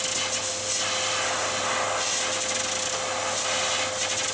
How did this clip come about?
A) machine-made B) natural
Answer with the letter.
B